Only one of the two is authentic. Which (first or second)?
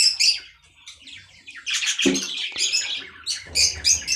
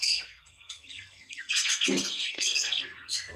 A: first